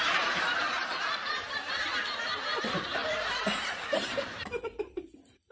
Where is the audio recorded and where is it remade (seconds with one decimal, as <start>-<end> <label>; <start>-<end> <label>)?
0.0-1.9 remade; 1.9-2.6 recorded; 2.6-5.5 remade

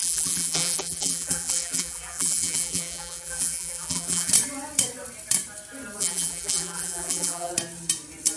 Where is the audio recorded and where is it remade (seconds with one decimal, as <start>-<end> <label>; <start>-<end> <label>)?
0.0-4.3 remade; 4.3-6.0 recorded; 6.0-7.5 remade; 7.5-8.4 recorded

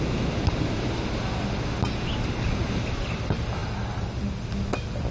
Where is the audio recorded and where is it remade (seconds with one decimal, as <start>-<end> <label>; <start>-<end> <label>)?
0.0-3.6 recorded; 3.6-4.5 remade; 4.5-5.1 recorded